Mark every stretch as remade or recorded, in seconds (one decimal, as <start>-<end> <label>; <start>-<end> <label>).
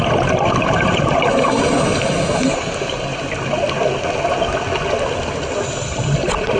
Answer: 0.0-6.6 recorded